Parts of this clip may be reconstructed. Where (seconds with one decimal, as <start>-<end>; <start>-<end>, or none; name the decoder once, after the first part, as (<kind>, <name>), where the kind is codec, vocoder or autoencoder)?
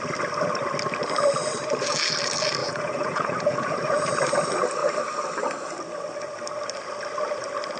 2.6-4.1 (vocoder, Vocos)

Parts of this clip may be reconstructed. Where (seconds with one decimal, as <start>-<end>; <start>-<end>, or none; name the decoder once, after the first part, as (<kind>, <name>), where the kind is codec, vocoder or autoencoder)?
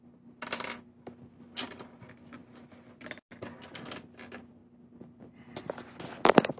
none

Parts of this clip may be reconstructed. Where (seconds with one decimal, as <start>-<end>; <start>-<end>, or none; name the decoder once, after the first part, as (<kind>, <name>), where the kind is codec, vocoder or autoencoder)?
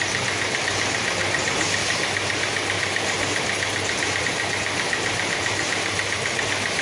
none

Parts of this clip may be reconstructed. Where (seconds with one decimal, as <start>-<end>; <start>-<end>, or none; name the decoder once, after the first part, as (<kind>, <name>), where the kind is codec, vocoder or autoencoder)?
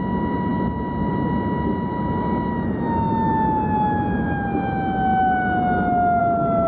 none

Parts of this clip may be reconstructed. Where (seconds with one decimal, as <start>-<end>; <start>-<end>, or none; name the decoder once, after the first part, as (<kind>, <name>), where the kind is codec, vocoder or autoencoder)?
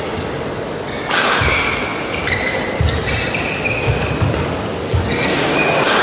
1.9-3.6 (vocoder, BigVGAN v2)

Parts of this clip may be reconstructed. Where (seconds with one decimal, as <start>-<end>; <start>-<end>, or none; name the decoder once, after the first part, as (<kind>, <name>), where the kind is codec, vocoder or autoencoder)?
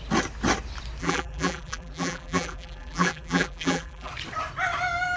1.0-4.1 (vocoder, BigVGAN v2)